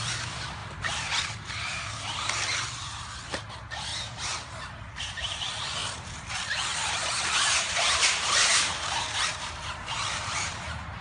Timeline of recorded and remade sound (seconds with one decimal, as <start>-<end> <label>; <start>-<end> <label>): 0.0-3.9 remade; 3.9-5.0 recorded; 5.0-5.8 remade; 5.8-7.7 recorded; 7.7-11.0 remade